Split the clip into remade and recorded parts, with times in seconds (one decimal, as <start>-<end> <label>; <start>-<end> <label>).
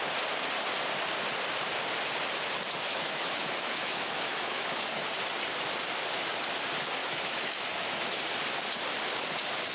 0.0-2.9 recorded; 2.9-5.1 remade; 5.1-7.0 recorded; 7.0-8.2 remade; 8.2-9.7 recorded